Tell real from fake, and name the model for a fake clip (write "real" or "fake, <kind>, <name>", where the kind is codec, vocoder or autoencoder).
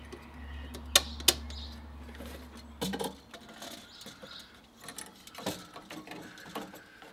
real